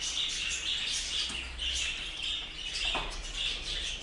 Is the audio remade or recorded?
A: recorded